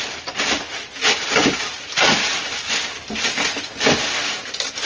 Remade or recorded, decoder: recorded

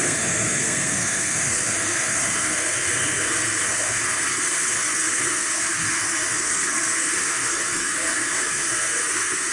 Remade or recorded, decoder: remade, codec, SNAC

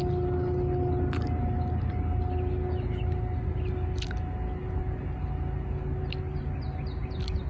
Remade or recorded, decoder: recorded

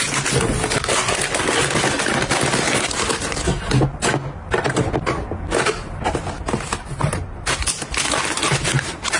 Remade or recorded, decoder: recorded